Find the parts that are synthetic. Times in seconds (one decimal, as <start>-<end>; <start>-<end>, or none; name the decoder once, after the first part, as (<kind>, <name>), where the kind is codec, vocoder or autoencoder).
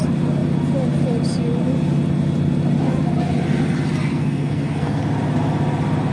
4.1-5.0 (codec, SNAC)